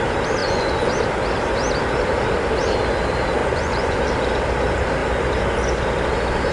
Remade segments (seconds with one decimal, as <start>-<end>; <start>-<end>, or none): 0.4-0.9; 3.4-4.0